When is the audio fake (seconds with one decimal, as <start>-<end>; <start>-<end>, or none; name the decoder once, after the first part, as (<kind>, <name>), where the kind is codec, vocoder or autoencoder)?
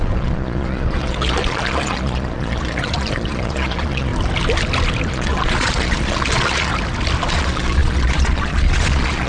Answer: 0.0-4.1 (vocoder, Vocos); 5.1-6.7; 7.3-9.3